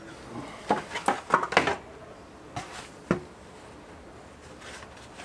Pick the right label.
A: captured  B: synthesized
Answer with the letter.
A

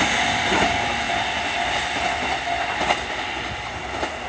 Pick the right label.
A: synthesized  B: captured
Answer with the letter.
B